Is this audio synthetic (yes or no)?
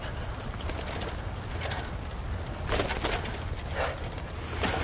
no